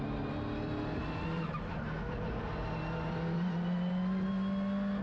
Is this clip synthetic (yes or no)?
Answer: no